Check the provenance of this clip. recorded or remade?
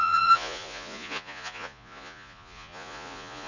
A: remade